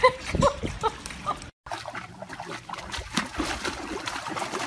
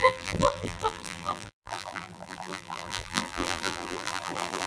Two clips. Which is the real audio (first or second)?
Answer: first